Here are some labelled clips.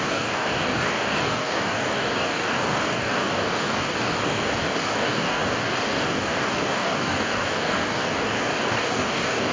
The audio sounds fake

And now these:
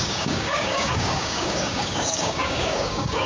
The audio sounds fake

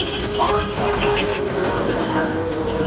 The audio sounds fake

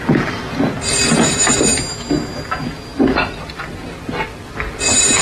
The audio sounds real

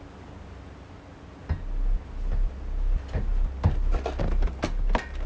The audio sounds real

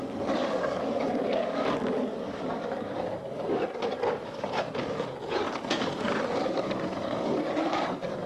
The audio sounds fake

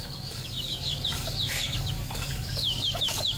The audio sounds fake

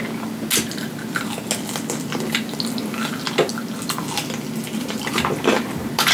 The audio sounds real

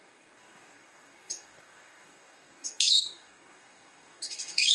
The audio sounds fake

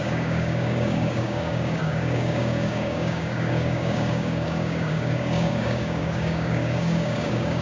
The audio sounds fake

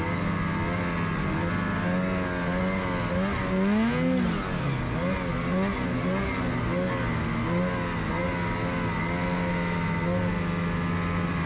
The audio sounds real